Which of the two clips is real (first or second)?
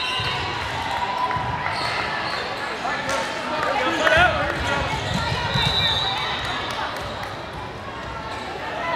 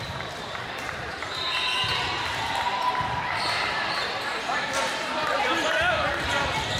first